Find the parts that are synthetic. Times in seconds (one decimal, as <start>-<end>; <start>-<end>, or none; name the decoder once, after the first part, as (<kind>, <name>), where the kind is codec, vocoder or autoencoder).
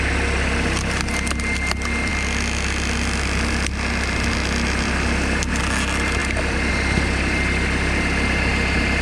none